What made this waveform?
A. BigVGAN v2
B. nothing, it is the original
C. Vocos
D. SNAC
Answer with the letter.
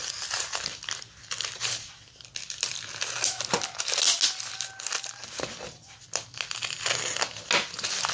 B